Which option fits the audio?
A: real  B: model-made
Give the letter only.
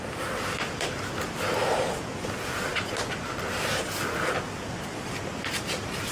A